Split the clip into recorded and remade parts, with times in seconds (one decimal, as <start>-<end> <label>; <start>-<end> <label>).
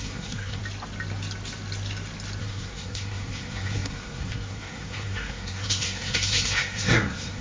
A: 0.0-0.6 remade; 0.6-2.4 recorded; 2.4-7.4 remade